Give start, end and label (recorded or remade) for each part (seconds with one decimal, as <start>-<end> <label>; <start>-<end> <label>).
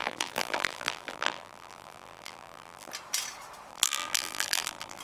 0.0-2.9 remade; 2.9-3.7 recorded; 3.7-5.0 remade